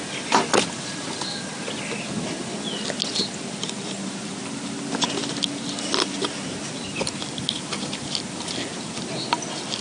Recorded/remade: recorded